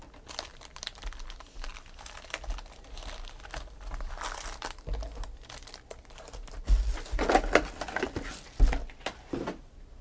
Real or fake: real